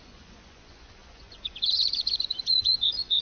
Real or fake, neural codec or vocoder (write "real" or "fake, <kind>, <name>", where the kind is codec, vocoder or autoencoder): fake, vocoder, Vocos